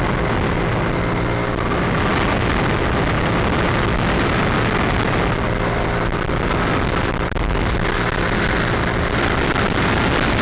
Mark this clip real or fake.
real